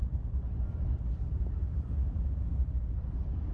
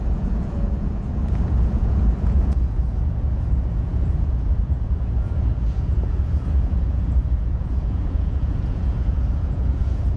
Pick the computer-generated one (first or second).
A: second